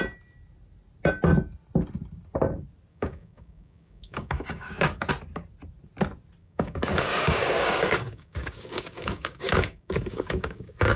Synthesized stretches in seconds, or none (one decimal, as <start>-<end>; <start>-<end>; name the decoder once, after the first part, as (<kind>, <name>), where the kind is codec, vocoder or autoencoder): 2.9-5.1 (codec, DAC); 6.4-11.0